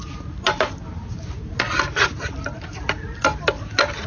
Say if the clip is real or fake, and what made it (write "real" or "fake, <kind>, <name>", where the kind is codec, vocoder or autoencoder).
real